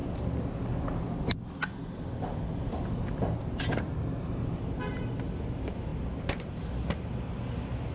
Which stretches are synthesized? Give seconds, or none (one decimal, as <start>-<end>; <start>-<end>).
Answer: 5.9-7.5